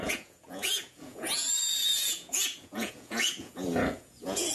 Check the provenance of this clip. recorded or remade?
remade